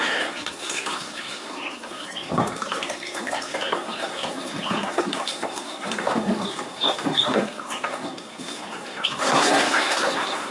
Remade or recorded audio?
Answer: remade